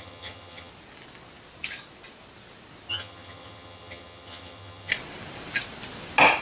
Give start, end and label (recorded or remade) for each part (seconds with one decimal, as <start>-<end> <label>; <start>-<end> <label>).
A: 0.0-0.7 remade; 0.7-2.9 recorded; 2.9-4.9 remade; 4.9-6.4 recorded